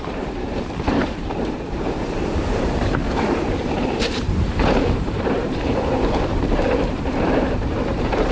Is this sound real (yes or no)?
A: no